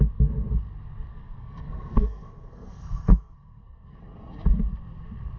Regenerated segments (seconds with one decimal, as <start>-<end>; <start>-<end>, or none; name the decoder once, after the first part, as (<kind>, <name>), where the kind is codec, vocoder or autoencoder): 1.1-4.0 (codec, SNAC)

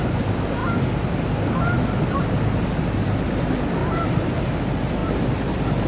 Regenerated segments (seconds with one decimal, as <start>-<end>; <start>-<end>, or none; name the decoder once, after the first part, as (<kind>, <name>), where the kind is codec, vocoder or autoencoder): 3.8-4.4 (vocoder, BigVGAN v2)

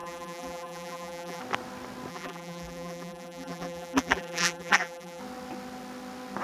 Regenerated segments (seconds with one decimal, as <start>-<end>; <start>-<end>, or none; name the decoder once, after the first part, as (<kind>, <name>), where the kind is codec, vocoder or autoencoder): 0.0-1.4 (vocoder, BigVGAN v2); 2.1-5.2

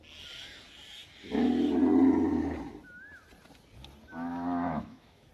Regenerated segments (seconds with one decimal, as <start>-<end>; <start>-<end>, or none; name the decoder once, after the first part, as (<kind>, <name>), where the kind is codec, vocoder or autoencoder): 4.3-5.3 (autoencoder, DAC-VAE)

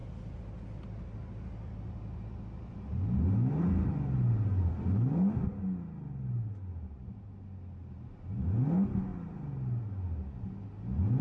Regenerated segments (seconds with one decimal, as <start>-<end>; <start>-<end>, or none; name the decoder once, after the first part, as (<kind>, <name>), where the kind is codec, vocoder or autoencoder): none

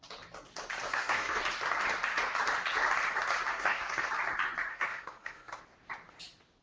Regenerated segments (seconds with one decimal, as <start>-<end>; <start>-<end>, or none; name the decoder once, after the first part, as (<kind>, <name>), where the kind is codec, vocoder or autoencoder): 0.9-1.4 (codec, SNAC); 3.5-4.1; 4.7-5.6

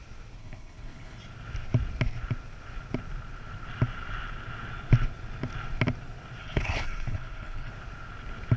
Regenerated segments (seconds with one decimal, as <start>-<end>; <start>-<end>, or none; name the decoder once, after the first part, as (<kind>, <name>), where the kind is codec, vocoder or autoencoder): 0.4-1.2 (codec, HILCodec); 6.4-7.7

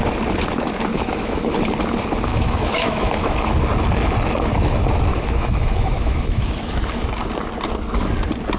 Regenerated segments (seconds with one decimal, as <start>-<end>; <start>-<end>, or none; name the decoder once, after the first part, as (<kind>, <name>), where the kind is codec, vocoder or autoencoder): 0.9-1.5 (autoencoder, DAC-VAE); 2.3-3.5; 5.1-6.8